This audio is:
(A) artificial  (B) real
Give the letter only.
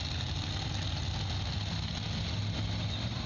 B